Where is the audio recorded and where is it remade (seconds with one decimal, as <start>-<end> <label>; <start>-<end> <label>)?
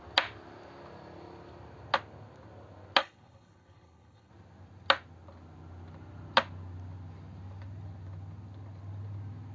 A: 0.0-3.0 recorded; 3.0-4.3 remade; 4.3-9.5 recorded